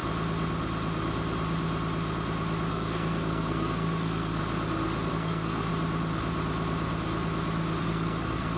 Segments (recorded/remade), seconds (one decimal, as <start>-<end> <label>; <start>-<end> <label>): 0.0-2.7 recorded; 2.7-4.4 remade; 4.4-5.1 recorded; 5.1-5.7 remade; 5.7-7.8 recorded; 7.8-8.6 remade